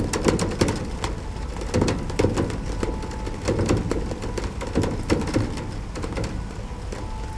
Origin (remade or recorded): recorded